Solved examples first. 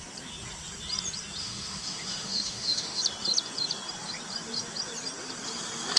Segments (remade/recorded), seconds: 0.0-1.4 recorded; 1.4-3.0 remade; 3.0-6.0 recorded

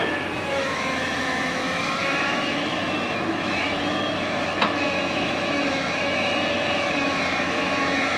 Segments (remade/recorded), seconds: 0.0-8.2 remade

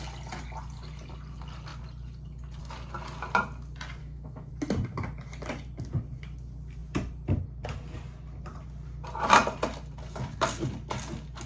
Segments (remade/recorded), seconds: 0.0-4.0 recorded; 4.0-4.5 remade; 4.5-11.5 recorded

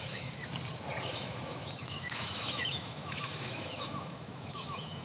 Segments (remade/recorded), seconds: 0.0-0.4 remade; 0.4-1.0 recorded; 1.0-5.0 remade

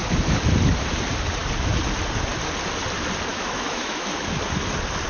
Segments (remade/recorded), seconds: 0.0-3.3 recorded; 3.3-4.2 remade; 4.2-5.1 recorded

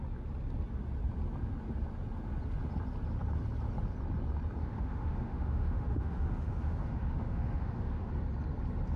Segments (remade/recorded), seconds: 0.0-4.6 recorded; 4.6-8.1 remade; 8.1-9.0 recorded